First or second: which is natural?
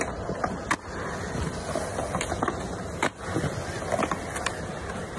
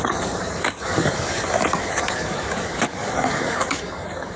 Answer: first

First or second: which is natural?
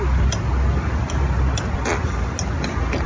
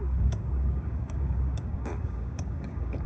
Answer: first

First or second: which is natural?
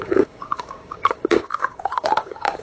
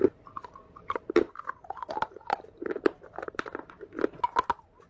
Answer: second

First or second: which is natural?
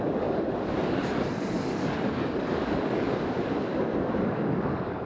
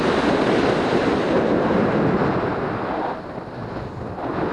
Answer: second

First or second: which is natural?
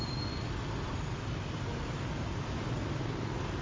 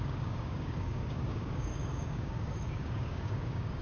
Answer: first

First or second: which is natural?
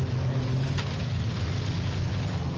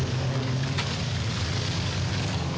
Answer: first